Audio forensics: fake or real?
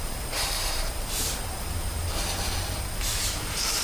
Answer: fake